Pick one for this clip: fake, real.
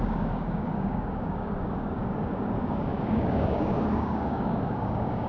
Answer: fake